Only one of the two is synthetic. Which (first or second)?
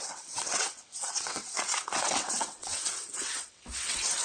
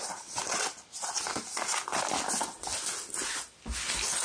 first